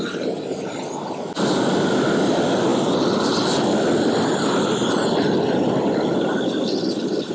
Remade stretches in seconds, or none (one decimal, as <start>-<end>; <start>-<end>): none